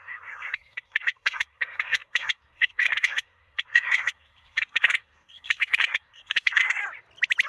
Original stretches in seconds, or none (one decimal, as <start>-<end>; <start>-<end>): 6.8-7.5